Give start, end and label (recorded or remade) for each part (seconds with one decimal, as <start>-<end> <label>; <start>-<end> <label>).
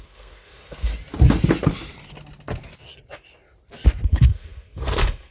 0.0-0.9 remade; 0.9-4.1 recorded; 4.1-5.3 remade